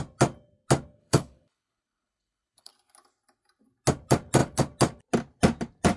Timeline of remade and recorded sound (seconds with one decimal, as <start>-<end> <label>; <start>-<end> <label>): 0.0-1.0 recorded; 1.0-2.7 remade; 2.7-6.0 recorded